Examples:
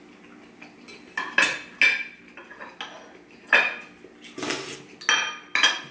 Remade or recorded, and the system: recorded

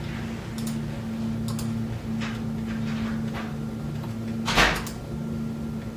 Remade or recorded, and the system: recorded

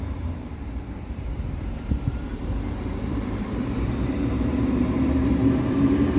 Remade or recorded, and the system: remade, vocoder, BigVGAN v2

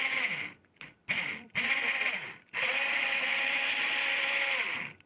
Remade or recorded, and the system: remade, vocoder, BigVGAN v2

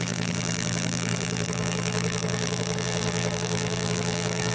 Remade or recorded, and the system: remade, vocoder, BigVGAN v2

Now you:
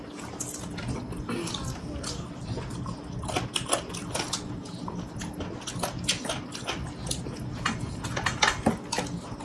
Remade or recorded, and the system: recorded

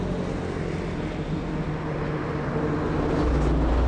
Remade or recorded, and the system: recorded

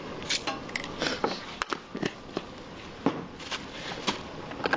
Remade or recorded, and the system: recorded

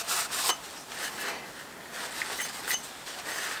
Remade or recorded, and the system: recorded